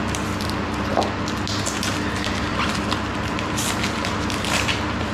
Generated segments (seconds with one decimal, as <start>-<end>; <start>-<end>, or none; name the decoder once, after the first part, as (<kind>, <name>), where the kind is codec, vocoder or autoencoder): 0.0-0.9 (vocoder, BigVGAN v2); 2.7-5.1

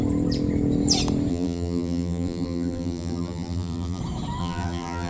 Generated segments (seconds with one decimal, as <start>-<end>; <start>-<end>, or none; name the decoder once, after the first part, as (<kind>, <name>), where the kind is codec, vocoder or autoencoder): 1.3-4.0 (vocoder, BigVGAN v2); 4.4-5.1